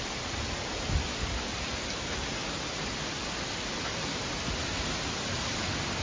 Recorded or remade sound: remade